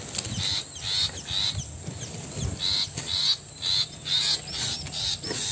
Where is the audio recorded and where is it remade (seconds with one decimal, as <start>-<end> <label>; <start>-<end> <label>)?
0.0-5.5 recorded